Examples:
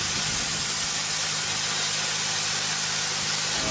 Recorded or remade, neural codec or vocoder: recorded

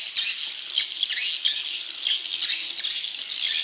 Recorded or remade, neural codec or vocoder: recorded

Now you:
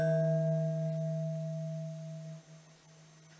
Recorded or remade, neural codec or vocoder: recorded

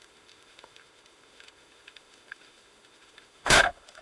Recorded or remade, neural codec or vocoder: remade, autoencoder, DAC-VAE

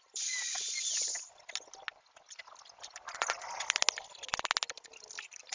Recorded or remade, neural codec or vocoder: recorded